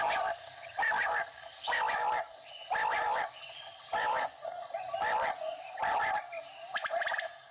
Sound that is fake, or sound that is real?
real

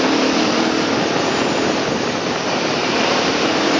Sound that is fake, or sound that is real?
real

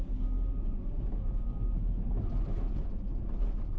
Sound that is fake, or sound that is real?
real